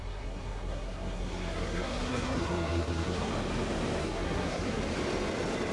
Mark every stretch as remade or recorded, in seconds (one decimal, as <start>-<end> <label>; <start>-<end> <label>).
0.0-3.3 remade; 3.3-4.0 recorded; 4.0-4.8 remade; 4.8-5.7 recorded